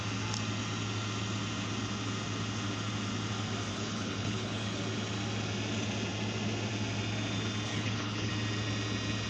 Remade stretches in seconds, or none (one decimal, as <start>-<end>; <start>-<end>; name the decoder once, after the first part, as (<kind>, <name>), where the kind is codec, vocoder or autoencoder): 3.7-4.8 (codec, HILCodec); 7.7-8.3